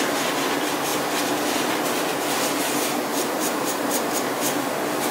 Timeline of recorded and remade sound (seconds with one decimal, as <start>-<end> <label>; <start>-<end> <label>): 0.0-3.1 recorded; 3.1-4.0 remade; 4.0-5.1 recorded